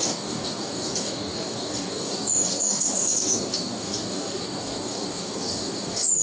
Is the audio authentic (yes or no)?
no